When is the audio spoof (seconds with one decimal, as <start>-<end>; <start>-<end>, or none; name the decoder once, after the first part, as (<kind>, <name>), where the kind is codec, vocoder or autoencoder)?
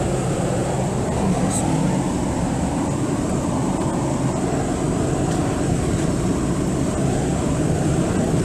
7.3-8.0 (vocoder, BigVGAN v2)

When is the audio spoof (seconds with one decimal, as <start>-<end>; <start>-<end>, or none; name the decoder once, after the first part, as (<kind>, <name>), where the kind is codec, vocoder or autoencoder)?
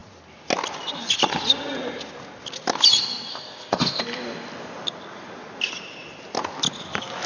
3.3-4.0 (codec, ZipCodec)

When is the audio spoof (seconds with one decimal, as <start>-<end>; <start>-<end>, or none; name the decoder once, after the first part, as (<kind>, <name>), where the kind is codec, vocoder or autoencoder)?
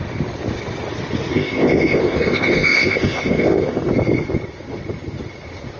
1.3-3.8 (codec, ZipCodec)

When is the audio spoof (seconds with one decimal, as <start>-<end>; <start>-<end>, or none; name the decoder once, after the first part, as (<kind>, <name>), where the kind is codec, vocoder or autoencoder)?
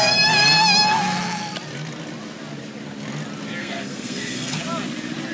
3.6-4.6 (codec, SNAC)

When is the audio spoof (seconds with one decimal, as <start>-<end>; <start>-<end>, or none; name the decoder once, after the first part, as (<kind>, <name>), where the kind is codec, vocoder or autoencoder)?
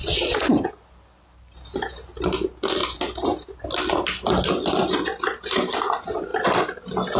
0.0-0.7 (vocoder, Vocos)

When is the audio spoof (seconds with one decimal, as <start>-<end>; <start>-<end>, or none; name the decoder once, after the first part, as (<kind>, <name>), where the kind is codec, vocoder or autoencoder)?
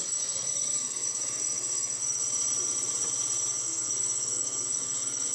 0.0-2.2 (codec, SNAC); 3.5-5.3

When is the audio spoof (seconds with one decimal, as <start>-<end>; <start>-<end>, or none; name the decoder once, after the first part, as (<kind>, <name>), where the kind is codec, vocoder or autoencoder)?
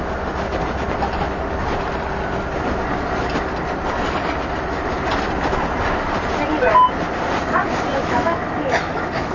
8.0-9.3 (autoencoder, DAC-VAE)